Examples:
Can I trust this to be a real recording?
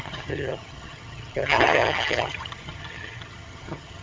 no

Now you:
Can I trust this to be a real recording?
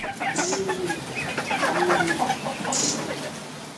yes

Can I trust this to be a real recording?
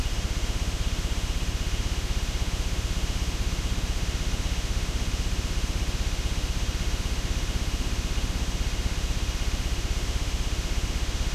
no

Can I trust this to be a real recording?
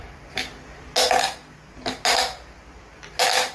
yes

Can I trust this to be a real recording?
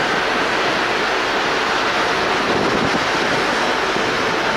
yes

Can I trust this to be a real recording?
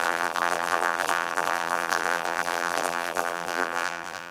no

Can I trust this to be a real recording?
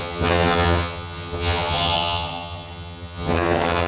no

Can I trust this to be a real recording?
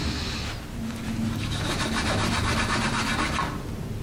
yes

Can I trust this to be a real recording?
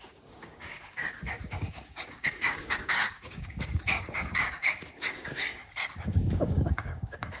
no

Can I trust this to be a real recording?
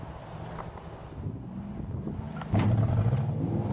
yes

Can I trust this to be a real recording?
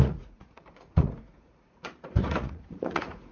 no